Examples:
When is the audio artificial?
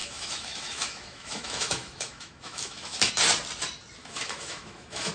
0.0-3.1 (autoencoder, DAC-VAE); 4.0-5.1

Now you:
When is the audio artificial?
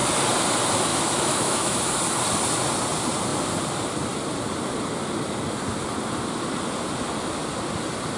0.9-2.0 (autoencoder, DAC-VAE)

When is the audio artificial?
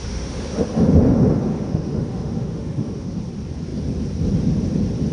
0.0-0.6 (autoencoder, DAC-VAE); 1.5-3.2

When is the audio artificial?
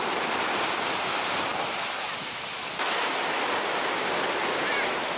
none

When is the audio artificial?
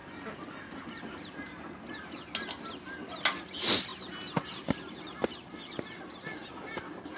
none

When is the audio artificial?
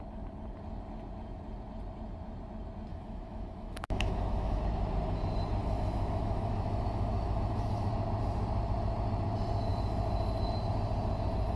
2.9-4.6 (autoencoder, DAC-VAE); 5.6-7.9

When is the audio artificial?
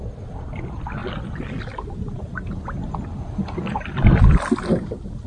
none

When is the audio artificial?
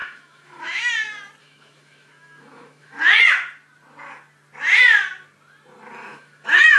0.0-0.9 (autoencoder, DAC-VAE); 1.4-3.2; 6.1-6.8